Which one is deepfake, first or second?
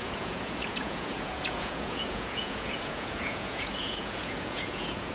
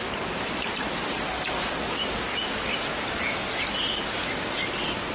first